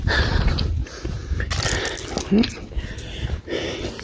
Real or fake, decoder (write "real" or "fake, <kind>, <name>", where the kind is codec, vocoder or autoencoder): real